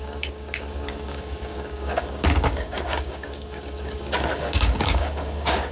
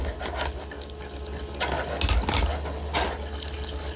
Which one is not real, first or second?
first